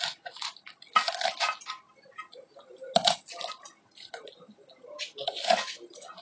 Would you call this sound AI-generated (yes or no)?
no